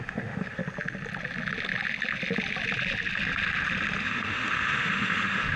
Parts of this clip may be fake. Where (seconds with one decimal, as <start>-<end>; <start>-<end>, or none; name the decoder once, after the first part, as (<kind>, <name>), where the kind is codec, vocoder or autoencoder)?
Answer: 0.0-0.6 (autoencoder, DAC-VAE); 4.0-5.6